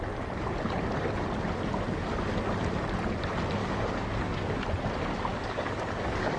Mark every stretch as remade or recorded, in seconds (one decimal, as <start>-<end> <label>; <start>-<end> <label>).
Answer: 0.0-3.6 recorded; 3.6-4.6 remade; 4.6-5.3 recorded; 5.3-6.4 remade